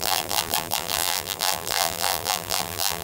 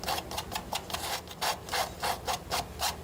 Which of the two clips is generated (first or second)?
first